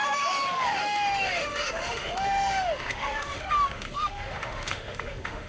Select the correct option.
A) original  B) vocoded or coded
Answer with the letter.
B